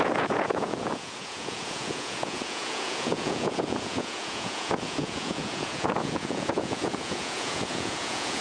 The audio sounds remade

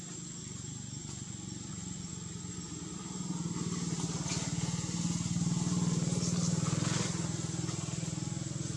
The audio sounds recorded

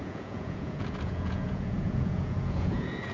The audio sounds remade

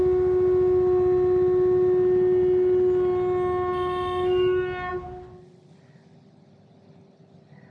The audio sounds recorded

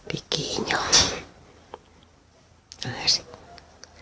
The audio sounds recorded